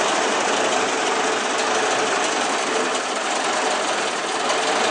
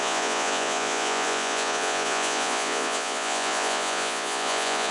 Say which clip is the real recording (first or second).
first